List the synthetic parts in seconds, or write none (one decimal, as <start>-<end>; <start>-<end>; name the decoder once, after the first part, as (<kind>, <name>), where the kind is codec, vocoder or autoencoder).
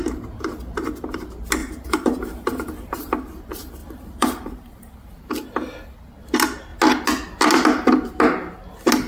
1.6-3.0 (vocoder, BigVGAN v2); 3.8-5.2